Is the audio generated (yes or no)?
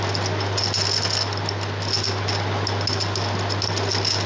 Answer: no